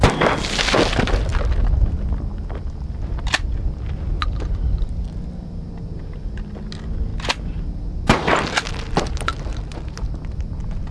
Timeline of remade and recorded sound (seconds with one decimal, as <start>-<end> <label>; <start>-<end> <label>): 0.0-10.9 recorded